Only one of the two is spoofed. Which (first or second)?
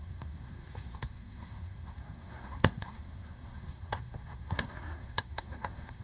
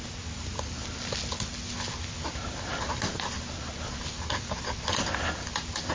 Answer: first